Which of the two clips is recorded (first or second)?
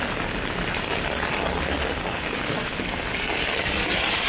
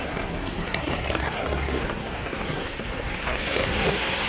first